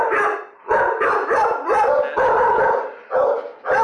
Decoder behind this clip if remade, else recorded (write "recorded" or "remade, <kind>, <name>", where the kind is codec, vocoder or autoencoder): recorded